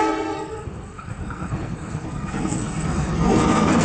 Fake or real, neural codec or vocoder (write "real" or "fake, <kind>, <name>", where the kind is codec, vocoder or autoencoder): fake, codec, SNAC